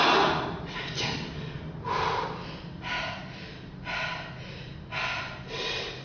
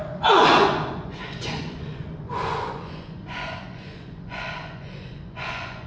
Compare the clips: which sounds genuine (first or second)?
first